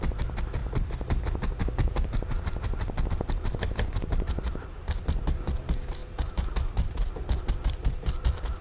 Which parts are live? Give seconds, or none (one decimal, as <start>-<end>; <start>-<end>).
0.0-8.6